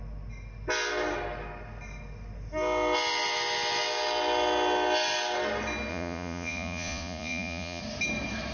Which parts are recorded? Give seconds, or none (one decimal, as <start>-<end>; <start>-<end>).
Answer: 0.0-5.9; 7.8-8.5